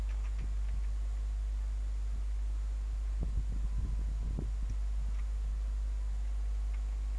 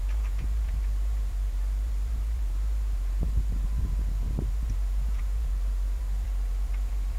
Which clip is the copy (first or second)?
second